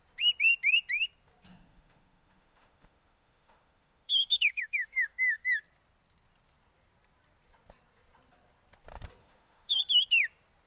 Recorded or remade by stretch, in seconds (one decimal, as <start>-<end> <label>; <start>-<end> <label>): 0.0-1.5 recorded; 1.5-5.5 remade; 5.5-9.2 recorded; 9.2-9.8 remade; 9.8-10.7 recorded